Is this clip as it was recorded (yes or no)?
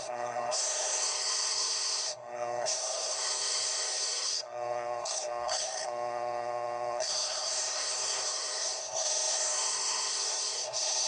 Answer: no